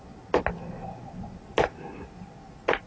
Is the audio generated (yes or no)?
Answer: no